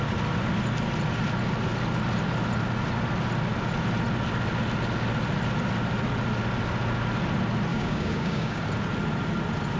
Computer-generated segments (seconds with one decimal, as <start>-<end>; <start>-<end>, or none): 7.7-8.6